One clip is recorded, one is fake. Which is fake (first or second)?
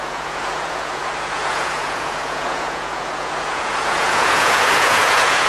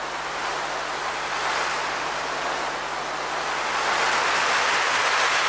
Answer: first